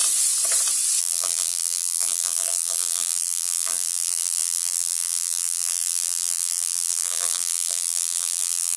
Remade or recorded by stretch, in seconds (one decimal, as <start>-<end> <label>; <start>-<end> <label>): 0.0-1.0 recorded; 1.0-8.8 remade